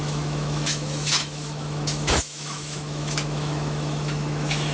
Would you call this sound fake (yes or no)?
yes